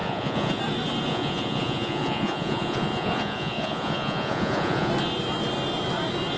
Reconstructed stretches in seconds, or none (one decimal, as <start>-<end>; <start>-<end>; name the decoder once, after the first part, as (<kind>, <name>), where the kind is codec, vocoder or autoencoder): 0.0-0.6 (vocoder, Vocos); 1.1-4.9